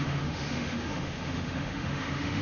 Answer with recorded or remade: remade